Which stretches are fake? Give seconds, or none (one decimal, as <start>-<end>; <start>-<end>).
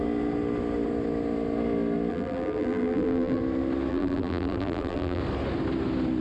2.1-3.4; 3.9-5.2